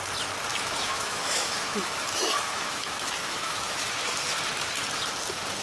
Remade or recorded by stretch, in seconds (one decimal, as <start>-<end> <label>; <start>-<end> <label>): 0.0-0.5 recorded; 0.5-3.9 remade; 3.9-5.6 recorded